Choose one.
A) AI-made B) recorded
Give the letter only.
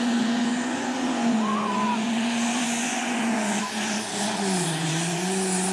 A